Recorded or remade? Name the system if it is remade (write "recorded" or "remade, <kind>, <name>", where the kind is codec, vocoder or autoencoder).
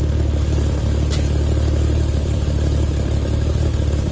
remade, vocoder, BigVGAN v2